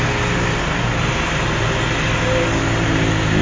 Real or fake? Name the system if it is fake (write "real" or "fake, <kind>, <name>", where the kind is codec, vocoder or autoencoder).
real